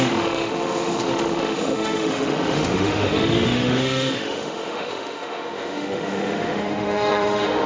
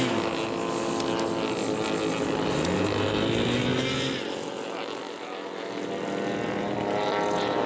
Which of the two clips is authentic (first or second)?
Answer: second